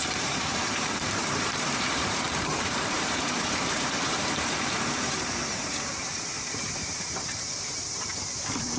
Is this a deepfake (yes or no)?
yes